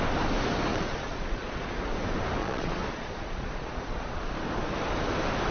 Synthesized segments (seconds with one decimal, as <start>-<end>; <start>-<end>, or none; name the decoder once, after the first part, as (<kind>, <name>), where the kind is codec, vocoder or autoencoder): 0.7-1.8 (vocoder, Vocos); 2.4-4.3